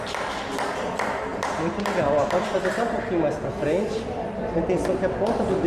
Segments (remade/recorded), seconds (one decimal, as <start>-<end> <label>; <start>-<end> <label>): 0.0-5.7 recorded